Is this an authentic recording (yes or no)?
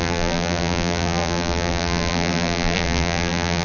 no